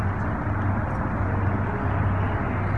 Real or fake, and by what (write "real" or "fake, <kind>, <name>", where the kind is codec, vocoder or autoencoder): real